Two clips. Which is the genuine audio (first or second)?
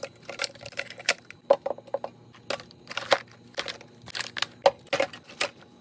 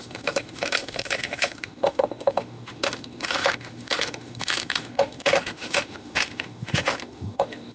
first